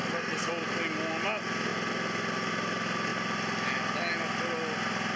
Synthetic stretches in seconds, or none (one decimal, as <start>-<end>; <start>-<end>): 0.0-0.5